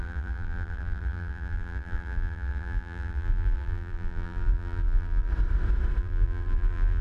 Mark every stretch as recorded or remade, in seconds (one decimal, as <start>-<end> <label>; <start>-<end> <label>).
0.0-5.3 remade; 5.3-6.0 recorded; 6.0-7.0 remade